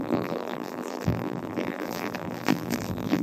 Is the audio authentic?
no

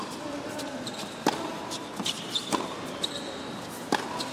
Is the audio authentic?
yes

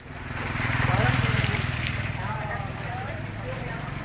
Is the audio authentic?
no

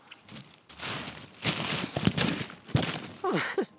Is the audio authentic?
no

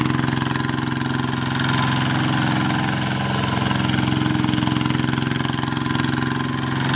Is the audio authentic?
yes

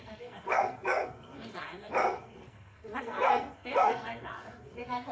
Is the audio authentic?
no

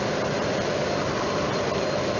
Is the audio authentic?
yes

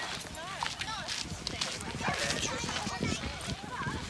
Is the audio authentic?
yes